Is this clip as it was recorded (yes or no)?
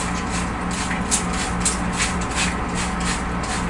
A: yes